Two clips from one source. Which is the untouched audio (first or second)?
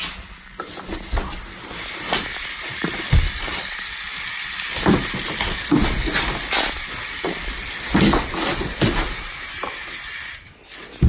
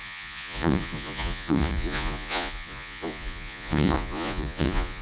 first